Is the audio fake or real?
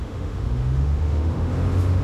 fake